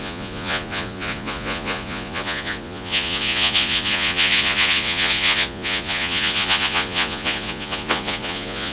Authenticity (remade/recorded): remade